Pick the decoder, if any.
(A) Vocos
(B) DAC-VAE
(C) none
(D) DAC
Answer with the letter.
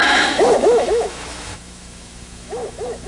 B